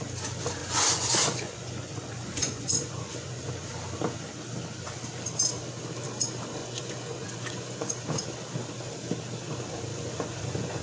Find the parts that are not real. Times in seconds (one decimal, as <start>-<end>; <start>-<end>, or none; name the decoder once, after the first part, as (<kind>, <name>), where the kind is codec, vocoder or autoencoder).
0.6-3.5 (vocoder, Vocos); 6.6-7.9; 9.9-10.8